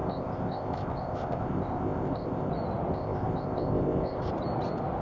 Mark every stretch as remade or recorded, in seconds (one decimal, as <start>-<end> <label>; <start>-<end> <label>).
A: 0.0-2.5 remade; 2.5-2.9 recorded; 2.9-4.3 remade; 4.3-5.0 recorded